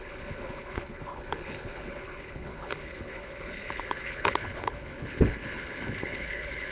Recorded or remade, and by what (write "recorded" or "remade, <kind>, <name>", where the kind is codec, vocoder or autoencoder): remade, codec, HILCodec